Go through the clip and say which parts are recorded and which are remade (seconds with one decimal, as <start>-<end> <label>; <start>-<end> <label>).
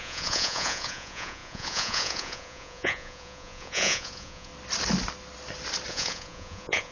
0.0-4.5 remade; 4.5-5.9 recorded; 5.9-6.9 remade